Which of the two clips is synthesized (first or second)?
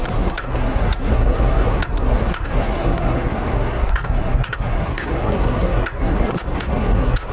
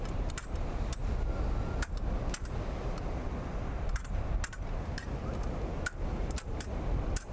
first